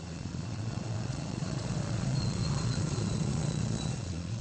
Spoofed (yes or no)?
yes